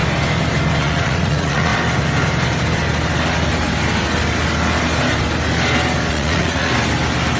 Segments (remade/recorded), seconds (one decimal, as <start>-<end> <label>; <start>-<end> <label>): 0.0-0.8 recorded; 0.8-1.7 remade; 1.7-6.1 recorded; 6.1-6.7 remade; 6.7-7.4 recorded